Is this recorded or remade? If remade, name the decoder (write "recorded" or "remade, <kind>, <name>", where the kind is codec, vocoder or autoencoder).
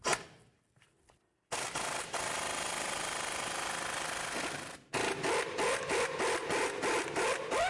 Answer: recorded